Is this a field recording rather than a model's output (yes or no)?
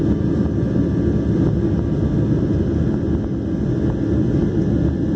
yes